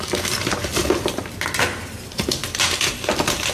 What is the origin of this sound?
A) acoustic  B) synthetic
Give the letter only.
B